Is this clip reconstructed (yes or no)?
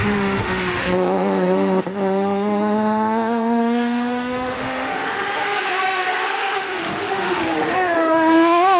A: yes